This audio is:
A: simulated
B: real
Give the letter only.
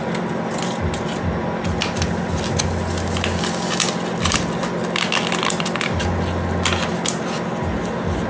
B